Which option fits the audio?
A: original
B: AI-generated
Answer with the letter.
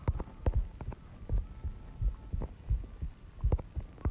A